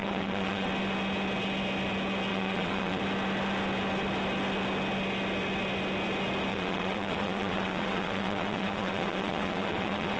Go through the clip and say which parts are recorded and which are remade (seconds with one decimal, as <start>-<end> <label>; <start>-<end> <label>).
0.0-0.7 remade; 0.7-2.3 recorded; 2.3-3.0 remade; 3.0-6.5 recorded; 6.5-10.2 remade